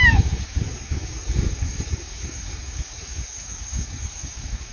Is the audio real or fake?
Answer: fake